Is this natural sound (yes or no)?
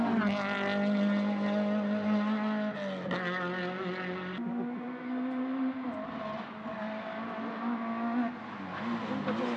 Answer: yes